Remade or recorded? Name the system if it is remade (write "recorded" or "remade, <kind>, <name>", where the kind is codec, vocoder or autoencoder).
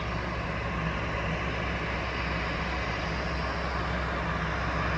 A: recorded